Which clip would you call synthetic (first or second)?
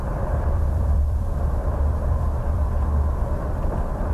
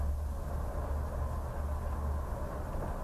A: first